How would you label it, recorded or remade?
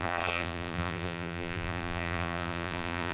remade